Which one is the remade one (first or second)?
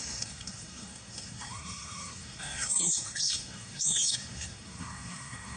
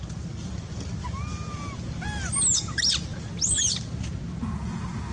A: first